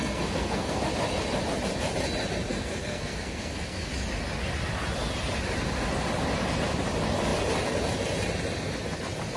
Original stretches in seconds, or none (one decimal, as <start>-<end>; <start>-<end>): 0.8-2.5; 3.9-9.4